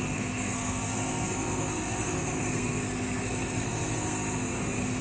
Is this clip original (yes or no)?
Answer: no